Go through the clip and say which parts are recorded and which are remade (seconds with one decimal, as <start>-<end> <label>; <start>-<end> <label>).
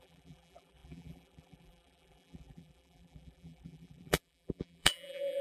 0.0-5.4 remade